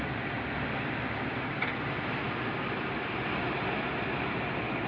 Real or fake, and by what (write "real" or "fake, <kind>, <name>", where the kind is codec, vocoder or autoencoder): real